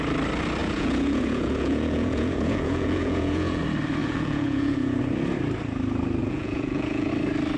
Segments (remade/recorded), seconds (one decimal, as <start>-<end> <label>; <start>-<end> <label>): 0.0-0.6 recorded; 0.6-3.6 remade; 3.6-4.0 recorded; 4.0-5.0 remade; 5.0-6.2 recorded; 6.2-7.1 remade; 7.1-7.6 recorded